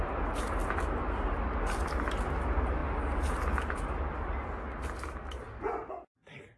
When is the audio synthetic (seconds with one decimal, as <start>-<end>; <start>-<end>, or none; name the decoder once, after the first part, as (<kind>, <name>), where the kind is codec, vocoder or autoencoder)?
none